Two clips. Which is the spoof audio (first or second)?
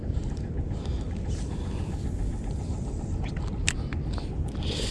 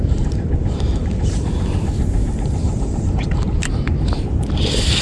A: second